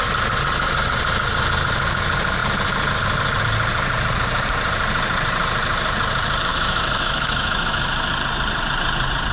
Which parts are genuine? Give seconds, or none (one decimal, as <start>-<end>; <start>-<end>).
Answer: 0.0-6.5; 8.1-9.3